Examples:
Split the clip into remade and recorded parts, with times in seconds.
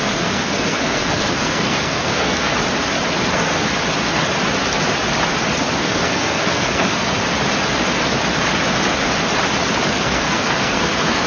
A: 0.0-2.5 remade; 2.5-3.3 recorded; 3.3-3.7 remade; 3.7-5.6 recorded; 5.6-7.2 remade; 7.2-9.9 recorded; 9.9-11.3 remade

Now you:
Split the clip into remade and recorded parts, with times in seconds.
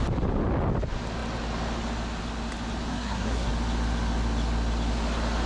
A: 0.0-2.9 recorded; 2.9-3.5 remade; 3.5-5.5 recorded